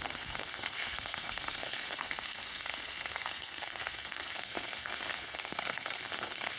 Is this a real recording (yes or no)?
no